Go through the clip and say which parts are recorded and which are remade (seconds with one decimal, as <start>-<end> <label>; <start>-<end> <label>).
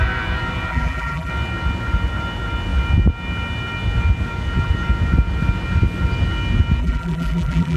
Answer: 0.0-0.7 recorded; 0.7-1.3 remade; 1.3-6.8 recorded; 6.8-7.8 remade